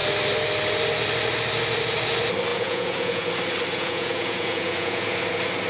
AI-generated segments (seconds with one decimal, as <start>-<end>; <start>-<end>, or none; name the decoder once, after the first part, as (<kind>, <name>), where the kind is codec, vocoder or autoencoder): 2.5-3.3 (vocoder, Vocos); 3.7-5.2